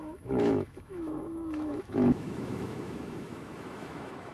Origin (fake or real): fake